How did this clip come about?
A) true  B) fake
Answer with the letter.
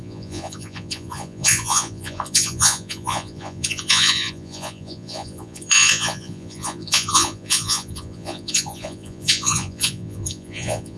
B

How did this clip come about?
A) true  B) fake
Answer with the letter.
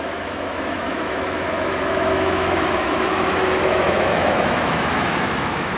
B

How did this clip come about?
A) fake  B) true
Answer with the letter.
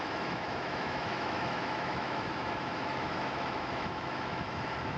A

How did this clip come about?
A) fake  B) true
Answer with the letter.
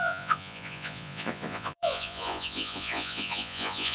A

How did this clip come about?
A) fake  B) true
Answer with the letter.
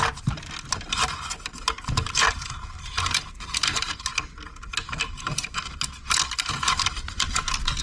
B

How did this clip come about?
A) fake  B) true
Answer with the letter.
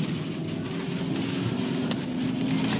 B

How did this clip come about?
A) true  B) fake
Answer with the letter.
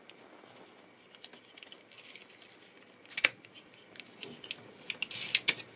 A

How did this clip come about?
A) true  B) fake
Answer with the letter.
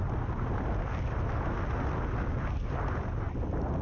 A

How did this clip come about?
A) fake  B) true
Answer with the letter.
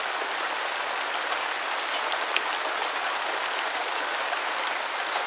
B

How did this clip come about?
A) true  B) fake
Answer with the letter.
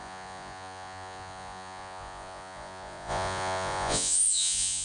B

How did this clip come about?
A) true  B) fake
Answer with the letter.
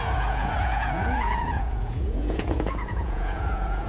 B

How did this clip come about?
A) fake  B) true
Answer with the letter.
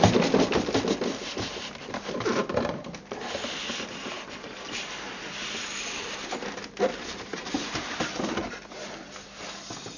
B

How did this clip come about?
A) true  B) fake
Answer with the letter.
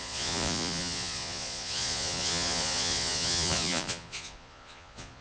B